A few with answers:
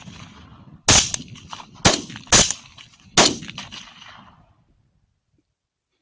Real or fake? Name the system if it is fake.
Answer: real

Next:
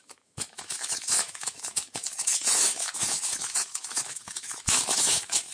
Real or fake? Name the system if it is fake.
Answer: fake, autoencoder, DAC-VAE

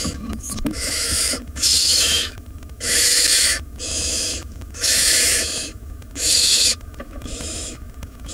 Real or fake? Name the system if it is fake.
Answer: fake, autoencoder, DAC-VAE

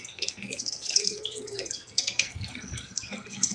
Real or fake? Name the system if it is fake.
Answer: fake, codec, SNAC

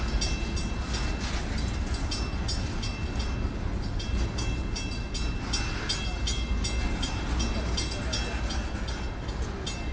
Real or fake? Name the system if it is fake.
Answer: real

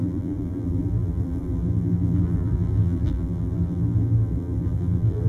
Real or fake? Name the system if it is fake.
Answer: fake, vocoder, BigVGAN v2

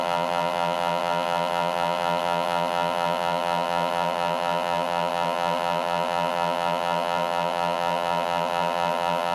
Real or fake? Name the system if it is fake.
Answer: fake, vocoder, BigVGAN v2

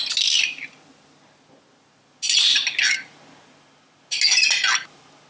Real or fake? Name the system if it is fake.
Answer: real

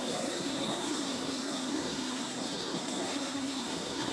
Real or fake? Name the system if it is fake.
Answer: fake, codec, SNAC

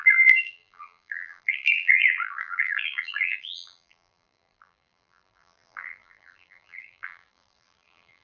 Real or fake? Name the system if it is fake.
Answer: fake, vocoder, BigVGAN v2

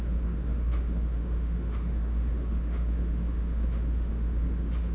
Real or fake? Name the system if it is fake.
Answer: fake, autoencoder, DAC-VAE